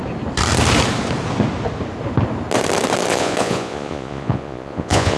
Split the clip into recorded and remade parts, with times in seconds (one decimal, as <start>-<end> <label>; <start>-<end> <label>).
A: 0.0-3.1 recorded; 3.1-5.2 remade